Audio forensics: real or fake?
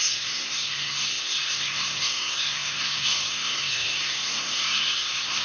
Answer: fake